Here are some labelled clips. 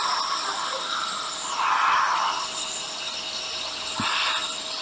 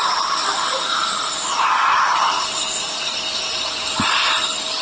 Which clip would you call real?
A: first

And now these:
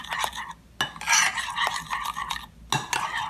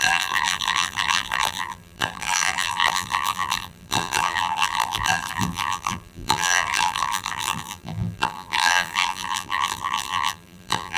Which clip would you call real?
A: first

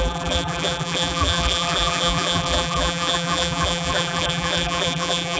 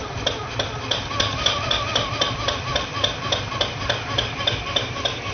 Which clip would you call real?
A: second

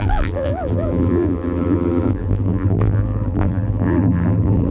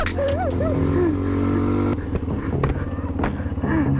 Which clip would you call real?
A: second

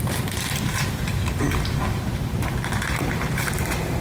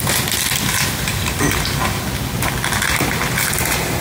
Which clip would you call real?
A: second